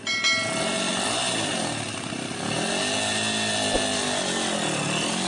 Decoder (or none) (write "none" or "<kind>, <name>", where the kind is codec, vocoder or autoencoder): none